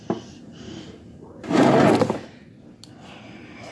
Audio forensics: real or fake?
real